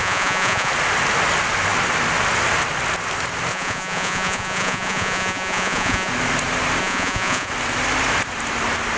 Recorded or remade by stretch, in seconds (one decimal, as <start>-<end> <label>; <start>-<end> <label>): 0.0-0.7 remade; 0.7-3.5 recorded; 3.5-6.1 remade; 6.1-6.8 recorded; 6.8-7.5 remade; 7.5-9.0 recorded